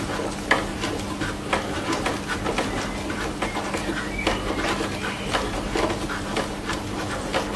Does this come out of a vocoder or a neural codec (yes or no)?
no